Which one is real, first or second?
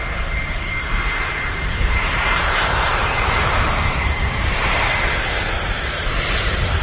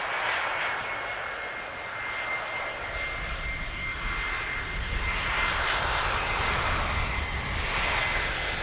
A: second